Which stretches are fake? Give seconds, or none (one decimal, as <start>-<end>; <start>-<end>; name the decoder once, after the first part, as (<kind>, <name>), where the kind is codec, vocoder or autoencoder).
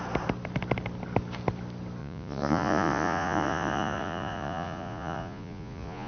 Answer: 2.0-6.1 (vocoder, Vocos)